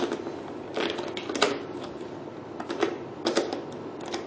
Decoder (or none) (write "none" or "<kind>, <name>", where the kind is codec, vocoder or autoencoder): none